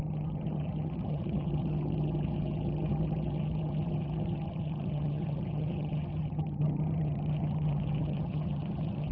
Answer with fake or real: fake